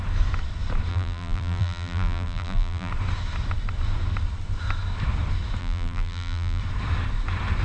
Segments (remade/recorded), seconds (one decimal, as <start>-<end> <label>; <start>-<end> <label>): 0.0-0.9 recorded; 0.9-2.9 remade; 2.9-5.6 recorded; 5.6-6.6 remade; 6.6-7.6 recorded